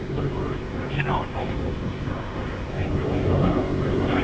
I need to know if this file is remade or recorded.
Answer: remade